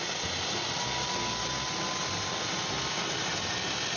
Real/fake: real